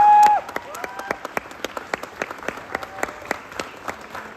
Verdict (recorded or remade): recorded